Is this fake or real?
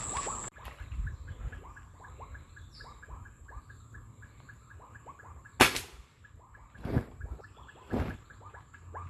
real